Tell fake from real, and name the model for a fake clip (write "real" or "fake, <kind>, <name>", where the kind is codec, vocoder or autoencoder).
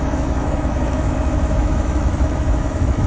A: fake, autoencoder, DAC-VAE